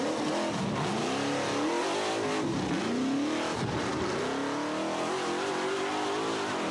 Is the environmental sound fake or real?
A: real